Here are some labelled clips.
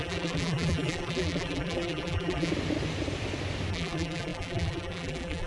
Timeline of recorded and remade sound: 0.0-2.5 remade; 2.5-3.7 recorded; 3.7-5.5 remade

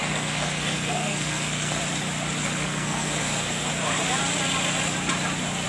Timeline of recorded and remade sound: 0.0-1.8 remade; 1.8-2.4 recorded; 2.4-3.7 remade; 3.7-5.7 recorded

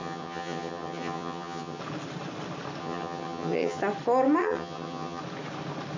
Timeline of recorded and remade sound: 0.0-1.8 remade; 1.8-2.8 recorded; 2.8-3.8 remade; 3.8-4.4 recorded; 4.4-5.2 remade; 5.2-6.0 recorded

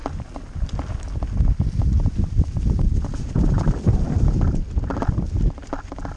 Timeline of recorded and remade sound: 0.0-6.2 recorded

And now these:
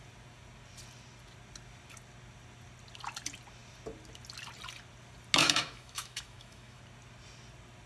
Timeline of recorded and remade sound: 0.0-5.4 recorded; 5.4-6.8 remade; 6.8-7.9 recorded

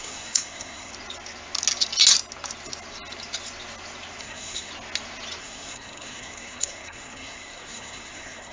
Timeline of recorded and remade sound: 0.0-0.9 remade; 0.9-4.2 recorded; 4.2-4.7 remade; 4.7-5.4 recorded; 5.4-8.5 remade